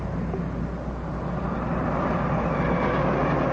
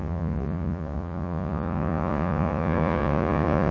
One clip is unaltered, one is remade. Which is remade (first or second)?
second